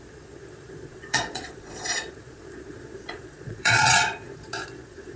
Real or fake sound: fake